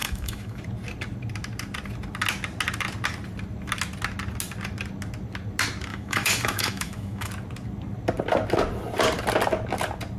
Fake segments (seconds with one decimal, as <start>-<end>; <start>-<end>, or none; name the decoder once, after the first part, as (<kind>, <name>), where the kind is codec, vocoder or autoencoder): 0.0-0.6 (autoencoder, DAC-VAE); 5.9-7.3